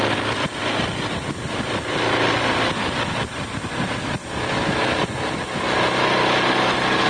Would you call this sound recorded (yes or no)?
yes